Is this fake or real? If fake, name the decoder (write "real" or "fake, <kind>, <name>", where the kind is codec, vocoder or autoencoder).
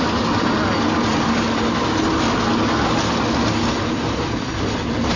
real